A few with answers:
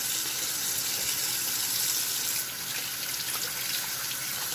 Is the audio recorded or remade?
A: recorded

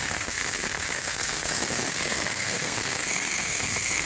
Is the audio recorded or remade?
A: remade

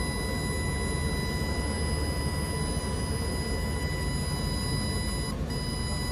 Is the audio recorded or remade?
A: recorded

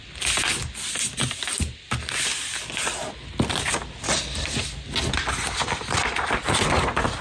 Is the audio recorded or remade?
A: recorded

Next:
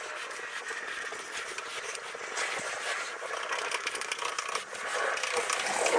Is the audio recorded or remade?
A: recorded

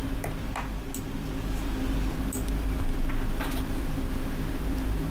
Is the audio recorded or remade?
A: recorded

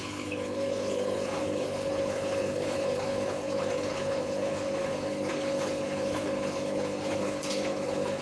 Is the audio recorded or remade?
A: remade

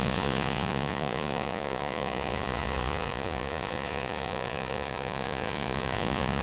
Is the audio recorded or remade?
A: remade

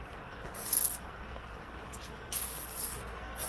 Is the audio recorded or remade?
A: remade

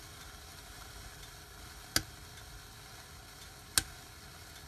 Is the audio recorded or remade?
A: recorded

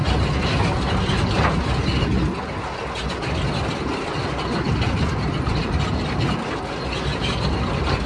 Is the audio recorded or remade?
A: recorded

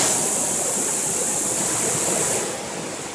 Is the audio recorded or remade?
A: recorded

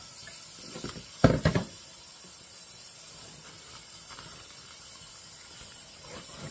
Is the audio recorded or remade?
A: recorded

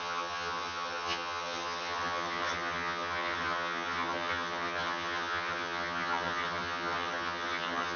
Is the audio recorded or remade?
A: remade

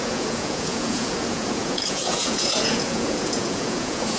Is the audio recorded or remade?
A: remade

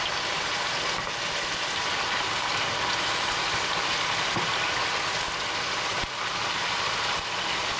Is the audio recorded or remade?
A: recorded